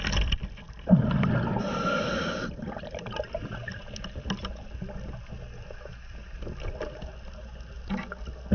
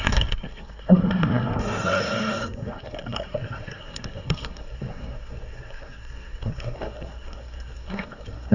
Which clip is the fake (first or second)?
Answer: second